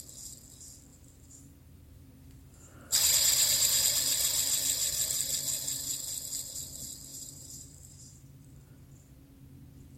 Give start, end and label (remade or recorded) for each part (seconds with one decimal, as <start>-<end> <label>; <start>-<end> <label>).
0.0-0.9 recorded; 0.9-3.8 remade; 3.8-7.1 recorded; 7.1-8.7 remade; 8.7-10.0 recorded